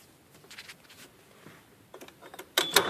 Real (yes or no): yes